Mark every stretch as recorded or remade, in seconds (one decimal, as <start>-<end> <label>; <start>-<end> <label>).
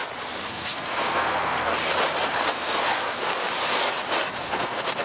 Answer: 0.0-0.5 recorded; 0.5-1.7 remade; 1.7-2.5 recorded; 2.5-3.3 remade; 3.3-4.4 recorded; 4.4-5.0 remade